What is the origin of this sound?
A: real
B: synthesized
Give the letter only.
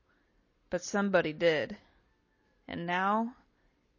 A